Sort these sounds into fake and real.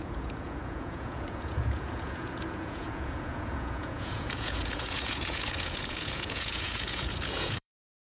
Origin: fake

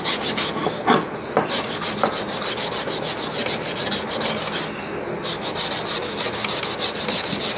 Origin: real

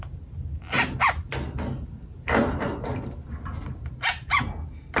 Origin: real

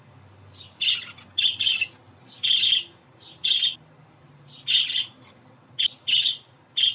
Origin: real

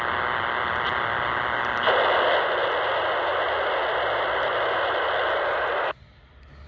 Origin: real